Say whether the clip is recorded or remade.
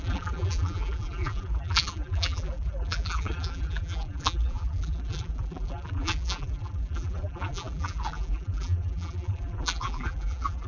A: remade